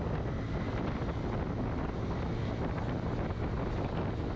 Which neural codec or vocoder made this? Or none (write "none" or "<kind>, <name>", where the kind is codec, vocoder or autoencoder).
none